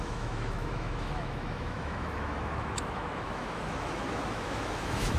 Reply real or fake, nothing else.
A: fake